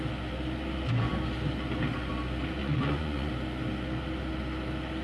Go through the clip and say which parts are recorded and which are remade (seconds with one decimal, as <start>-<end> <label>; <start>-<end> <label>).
0.0-2.6 recorded; 2.6-3.3 remade; 3.3-5.0 recorded